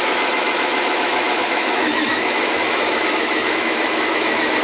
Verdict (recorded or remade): remade